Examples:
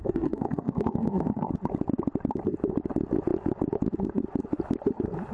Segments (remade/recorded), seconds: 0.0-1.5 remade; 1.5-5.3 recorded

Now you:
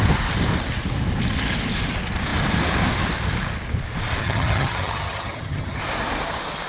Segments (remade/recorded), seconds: 0.0-4.2 recorded; 4.2-5.8 remade; 5.8-6.7 recorded

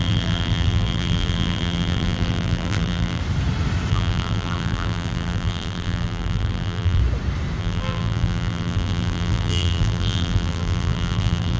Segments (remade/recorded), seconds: 0.0-3.2 remade; 3.2-3.9 recorded; 3.9-7.0 remade; 7.0-7.6 recorded; 7.6-11.6 remade

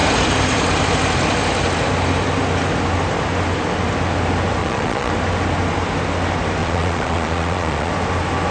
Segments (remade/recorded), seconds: 0.0-4.6 recorded; 4.6-5.1 remade; 5.1-6.6 recorded; 6.6-7.9 remade; 7.9-8.5 recorded